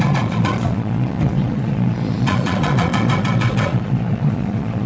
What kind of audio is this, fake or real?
fake